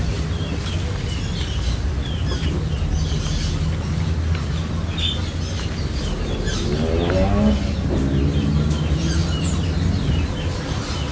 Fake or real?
real